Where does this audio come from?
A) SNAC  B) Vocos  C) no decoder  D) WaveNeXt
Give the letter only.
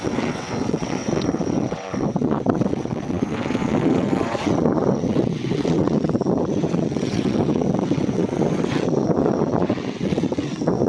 D